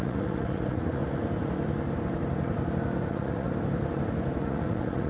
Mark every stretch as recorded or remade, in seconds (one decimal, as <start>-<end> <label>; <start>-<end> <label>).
0.0-1.0 remade; 1.0-3.1 recorded; 3.1-3.5 remade; 3.5-4.4 recorded; 4.4-5.1 remade